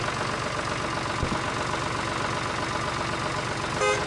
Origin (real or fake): real